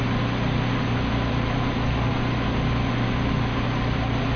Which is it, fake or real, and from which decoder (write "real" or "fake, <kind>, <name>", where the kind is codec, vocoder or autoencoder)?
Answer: real